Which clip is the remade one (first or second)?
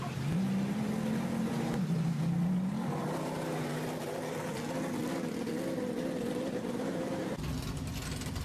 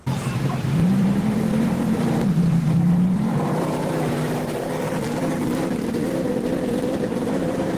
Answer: second